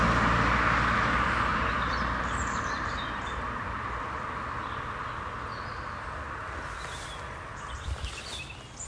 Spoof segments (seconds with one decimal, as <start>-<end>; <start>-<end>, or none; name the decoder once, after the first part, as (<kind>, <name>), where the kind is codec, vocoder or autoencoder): 1.5-4.0 (vocoder, BigVGAN v2); 7.5-8.3